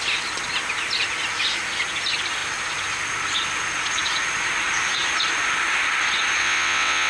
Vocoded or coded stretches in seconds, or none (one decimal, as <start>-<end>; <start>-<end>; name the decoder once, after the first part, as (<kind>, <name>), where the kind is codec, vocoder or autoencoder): 6.4-7.1 (vocoder, WaveNeXt)